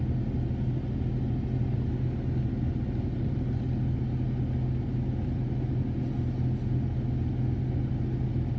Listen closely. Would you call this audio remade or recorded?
recorded